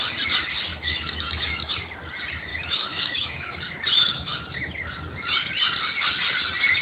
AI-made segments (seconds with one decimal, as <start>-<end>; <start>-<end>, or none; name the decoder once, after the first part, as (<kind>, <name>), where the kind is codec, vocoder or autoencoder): 0.7-1.7 (autoencoder, DAC-VAE); 2.5-3.6